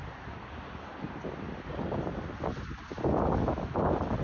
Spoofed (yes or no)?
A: no